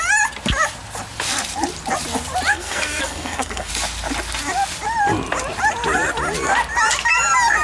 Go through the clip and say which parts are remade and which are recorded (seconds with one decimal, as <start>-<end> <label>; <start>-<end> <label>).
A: 0.0-2.5 recorded; 2.5-3.7 remade; 3.7-7.6 recorded